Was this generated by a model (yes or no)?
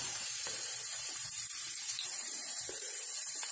yes